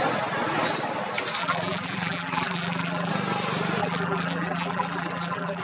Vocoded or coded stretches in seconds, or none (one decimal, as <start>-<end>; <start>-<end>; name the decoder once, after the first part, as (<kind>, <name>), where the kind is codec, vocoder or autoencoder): 1.4-3.1 (vocoder, BigVGAN v2); 3.8-5.6